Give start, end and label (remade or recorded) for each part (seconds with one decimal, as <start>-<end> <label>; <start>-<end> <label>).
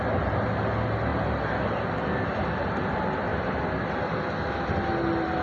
0.0-5.4 recorded